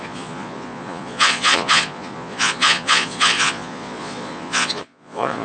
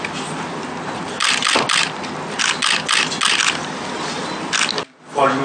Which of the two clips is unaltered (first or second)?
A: second